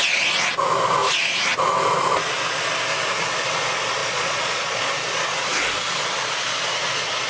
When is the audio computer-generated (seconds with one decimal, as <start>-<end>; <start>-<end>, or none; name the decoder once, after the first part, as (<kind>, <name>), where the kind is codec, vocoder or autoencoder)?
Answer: 4.0-4.9 (vocoder, Vocos)

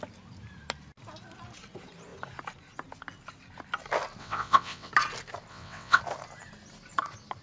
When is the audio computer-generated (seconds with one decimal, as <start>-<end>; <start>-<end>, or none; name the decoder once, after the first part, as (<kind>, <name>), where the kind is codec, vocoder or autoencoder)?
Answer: 4.2-4.9 (vocoder, WaveNeXt); 5.5-6.0

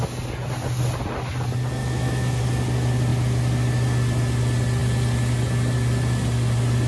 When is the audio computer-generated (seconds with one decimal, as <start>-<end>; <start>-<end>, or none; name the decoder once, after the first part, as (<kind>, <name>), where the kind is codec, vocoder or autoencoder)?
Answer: 1.8-2.4 (autoencoder, DAC-VAE)

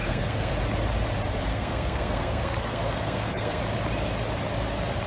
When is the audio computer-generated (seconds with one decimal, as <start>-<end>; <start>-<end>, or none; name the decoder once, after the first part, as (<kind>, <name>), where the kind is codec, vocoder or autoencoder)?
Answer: 0.0-0.5 (codec, SNAC); 1.5-3.6

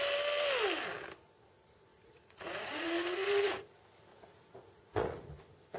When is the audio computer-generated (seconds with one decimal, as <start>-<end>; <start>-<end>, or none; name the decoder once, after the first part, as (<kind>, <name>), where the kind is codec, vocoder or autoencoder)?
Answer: 1.9-3.6 (vocoder, Vocos); 4.1-5.3